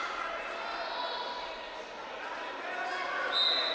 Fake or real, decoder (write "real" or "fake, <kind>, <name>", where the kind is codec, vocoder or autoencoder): real